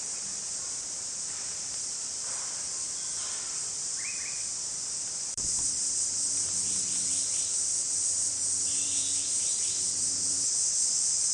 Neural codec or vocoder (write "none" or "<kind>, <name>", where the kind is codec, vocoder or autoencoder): vocoder, BigVGAN v2